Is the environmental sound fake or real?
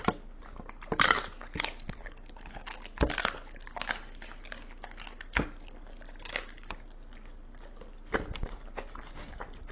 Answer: real